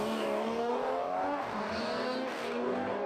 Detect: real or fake fake